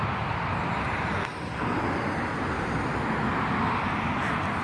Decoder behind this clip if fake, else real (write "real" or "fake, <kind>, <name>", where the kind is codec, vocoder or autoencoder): real